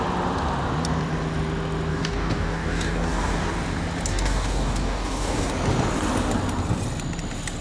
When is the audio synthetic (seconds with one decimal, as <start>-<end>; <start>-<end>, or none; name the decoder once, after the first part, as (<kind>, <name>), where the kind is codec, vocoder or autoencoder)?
1.9-3.5 (codec, DAC); 4.1-5.5